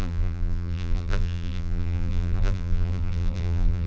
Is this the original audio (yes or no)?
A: no